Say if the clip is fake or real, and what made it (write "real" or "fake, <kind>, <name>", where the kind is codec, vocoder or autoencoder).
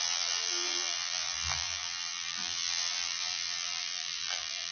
fake, vocoder, BigVGAN v2